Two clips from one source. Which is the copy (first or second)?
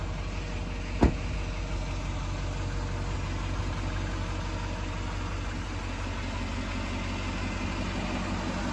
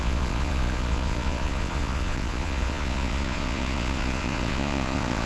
second